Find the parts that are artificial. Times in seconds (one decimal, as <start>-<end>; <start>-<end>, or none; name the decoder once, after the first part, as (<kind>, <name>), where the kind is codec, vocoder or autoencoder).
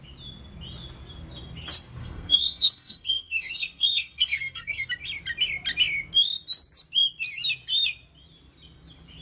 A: 2.0-4.9 (codec, SNAC)